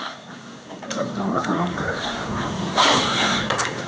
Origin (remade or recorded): remade